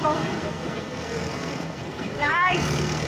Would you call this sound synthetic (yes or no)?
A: yes